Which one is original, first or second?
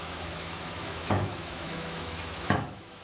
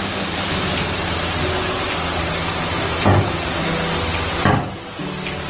second